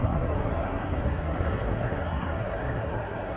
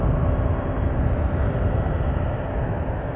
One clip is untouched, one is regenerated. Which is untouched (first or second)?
second